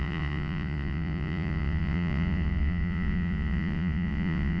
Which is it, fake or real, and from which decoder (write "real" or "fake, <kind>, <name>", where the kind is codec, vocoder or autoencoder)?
fake, vocoder, Vocos